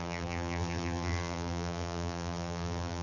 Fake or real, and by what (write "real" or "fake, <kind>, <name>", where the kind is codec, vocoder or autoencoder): fake, vocoder, BigVGAN v2